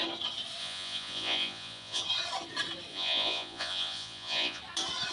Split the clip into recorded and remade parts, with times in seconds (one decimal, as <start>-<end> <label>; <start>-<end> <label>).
0.0-0.6 recorded; 0.6-2.0 remade; 2.0-2.9 recorded; 2.9-4.6 remade; 4.6-5.1 recorded